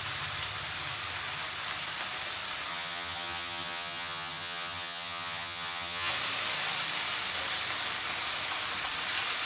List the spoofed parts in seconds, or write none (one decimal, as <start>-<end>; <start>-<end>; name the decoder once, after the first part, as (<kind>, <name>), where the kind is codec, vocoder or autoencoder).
2.7-6.1 (vocoder, HiFi-GAN)